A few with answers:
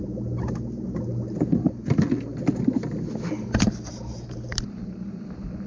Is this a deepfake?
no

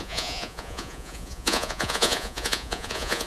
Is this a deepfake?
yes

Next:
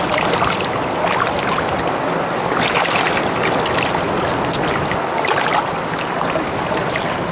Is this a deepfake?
no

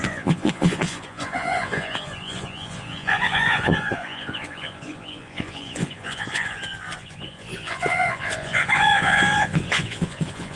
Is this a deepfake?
yes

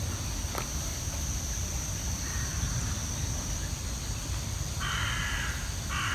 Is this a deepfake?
no